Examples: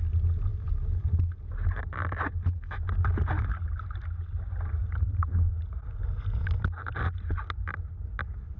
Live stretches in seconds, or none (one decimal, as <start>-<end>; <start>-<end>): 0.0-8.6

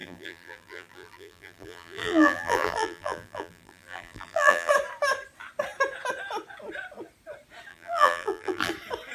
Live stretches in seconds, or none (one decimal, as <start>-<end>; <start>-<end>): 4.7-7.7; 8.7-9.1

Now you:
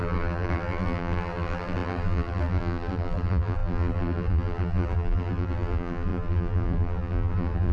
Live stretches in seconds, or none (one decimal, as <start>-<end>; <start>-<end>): none

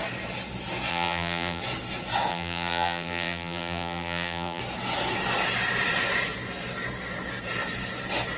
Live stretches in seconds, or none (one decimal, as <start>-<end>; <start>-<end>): 0.0-0.9; 1.6-2.3; 4.6-8.4